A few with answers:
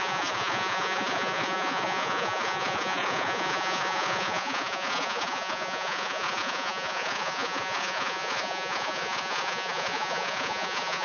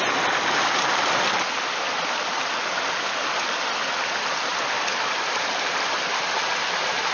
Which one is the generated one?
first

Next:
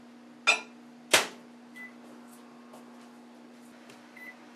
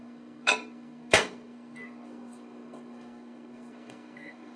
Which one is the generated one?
second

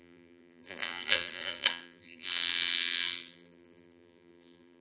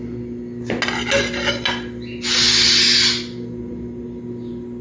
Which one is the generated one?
first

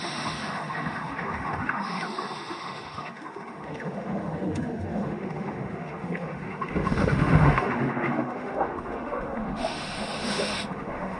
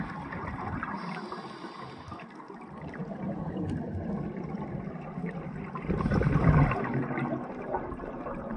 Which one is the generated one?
first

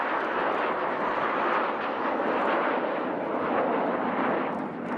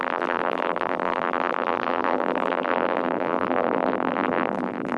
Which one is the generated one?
second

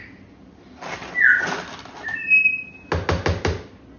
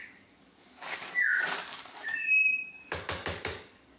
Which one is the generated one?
second